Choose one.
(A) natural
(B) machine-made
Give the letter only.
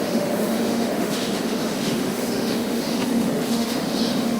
B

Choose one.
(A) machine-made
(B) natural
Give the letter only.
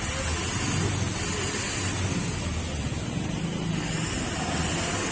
B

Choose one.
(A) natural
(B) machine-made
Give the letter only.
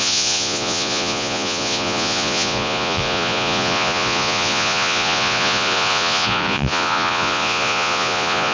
B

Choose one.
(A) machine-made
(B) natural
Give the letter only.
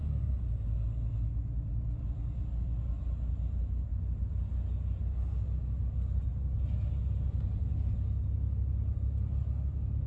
B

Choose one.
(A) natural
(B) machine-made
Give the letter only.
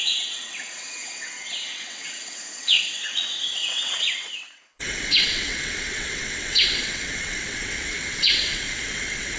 B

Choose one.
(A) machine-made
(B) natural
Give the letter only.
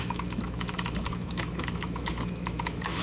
A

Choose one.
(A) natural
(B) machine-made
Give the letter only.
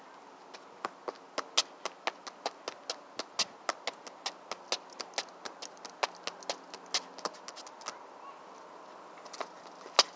A